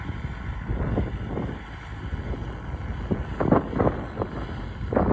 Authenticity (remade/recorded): recorded